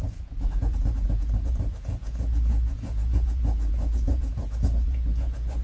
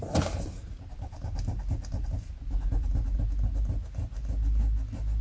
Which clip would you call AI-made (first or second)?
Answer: first